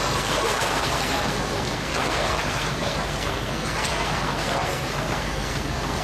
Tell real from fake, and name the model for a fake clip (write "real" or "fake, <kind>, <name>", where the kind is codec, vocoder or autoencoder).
fake, codec, SNAC